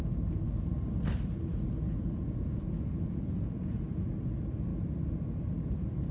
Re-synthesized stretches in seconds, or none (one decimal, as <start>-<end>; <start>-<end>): 1.5-4.1